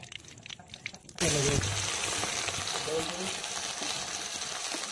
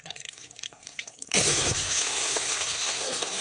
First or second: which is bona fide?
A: first